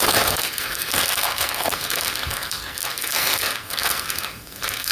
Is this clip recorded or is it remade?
remade